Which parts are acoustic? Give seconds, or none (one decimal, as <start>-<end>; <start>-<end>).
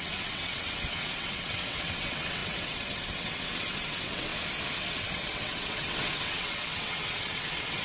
4.3-4.9